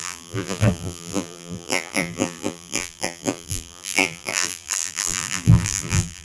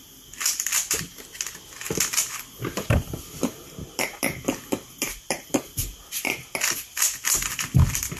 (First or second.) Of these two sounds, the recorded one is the second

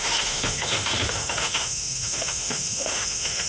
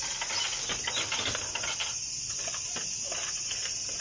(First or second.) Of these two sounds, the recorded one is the second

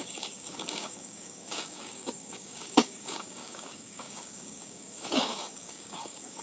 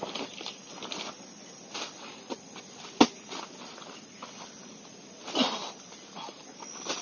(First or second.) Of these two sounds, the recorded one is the second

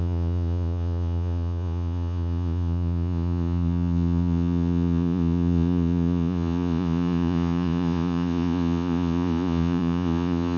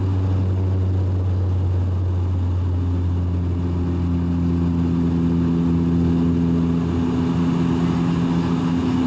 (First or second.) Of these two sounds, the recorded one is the second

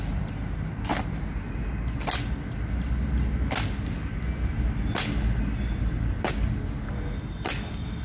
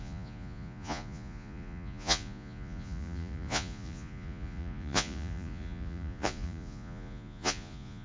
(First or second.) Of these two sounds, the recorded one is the first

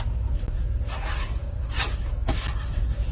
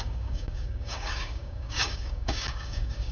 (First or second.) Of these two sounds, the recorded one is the first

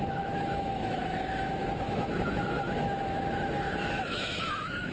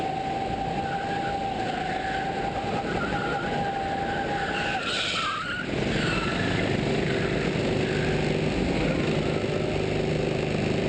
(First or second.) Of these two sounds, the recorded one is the second